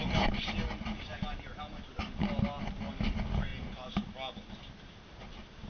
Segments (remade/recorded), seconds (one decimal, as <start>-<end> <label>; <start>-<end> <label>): 0.0-5.7 recorded